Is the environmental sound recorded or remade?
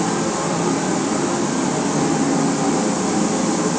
recorded